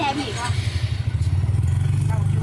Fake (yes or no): no